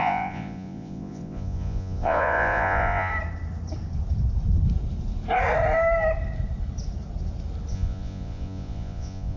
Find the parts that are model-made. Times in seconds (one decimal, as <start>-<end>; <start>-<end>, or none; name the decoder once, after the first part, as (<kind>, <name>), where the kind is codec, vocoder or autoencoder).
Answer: 0.0-3.1 (vocoder, Vocos); 7.7-9.4